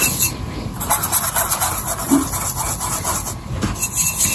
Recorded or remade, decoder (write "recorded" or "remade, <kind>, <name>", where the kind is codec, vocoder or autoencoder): recorded